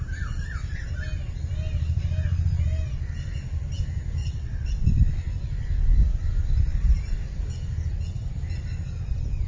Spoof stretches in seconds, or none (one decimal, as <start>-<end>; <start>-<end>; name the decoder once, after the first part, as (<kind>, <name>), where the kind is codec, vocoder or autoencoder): 4.2-4.8 (vocoder, WaveNeXt)